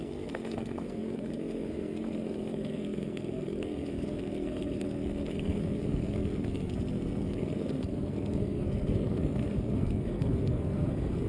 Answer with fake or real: fake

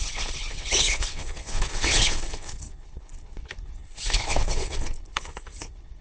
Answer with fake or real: fake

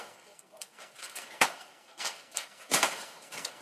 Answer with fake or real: fake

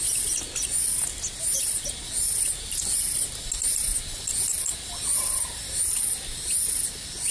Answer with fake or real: real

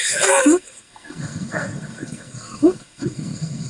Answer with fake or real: fake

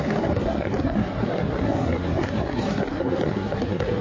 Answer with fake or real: fake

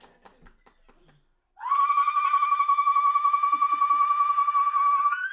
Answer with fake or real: real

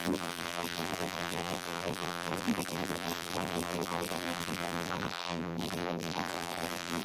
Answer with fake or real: fake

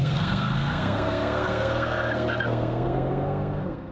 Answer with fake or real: fake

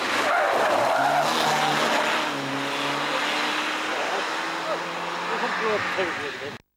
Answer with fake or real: real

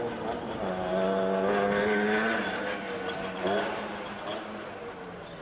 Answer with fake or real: real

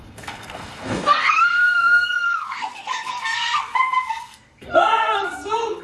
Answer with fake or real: fake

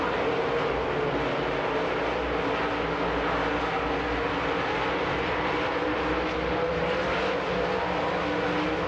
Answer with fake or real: real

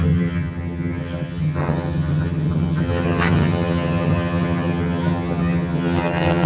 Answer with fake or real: fake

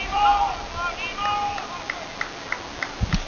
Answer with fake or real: real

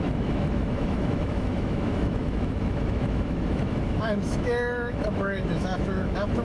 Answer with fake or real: fake